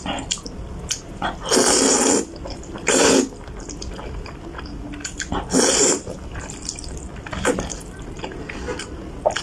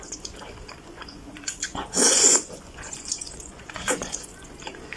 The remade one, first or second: second